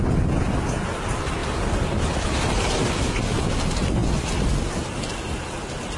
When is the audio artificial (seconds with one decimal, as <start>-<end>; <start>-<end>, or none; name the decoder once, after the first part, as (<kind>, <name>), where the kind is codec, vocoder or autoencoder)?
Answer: none